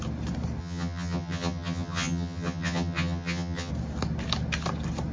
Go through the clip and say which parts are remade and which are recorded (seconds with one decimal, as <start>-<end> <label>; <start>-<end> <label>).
0.0-0.6 recorded; 0.6-3.7 remade; 3.7-5.1 recorded